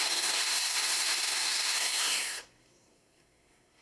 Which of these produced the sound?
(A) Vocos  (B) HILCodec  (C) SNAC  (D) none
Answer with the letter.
C